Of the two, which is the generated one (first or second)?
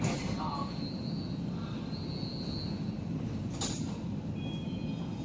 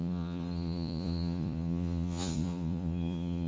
second